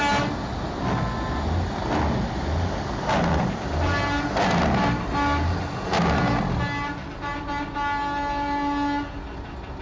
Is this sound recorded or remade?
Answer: recorded